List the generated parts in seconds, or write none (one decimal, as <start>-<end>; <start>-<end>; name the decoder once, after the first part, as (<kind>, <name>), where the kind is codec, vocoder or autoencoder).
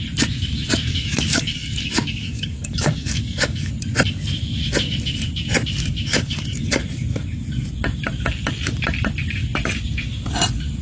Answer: 0.9-3.7 (codec, DAC); 6.1-6.8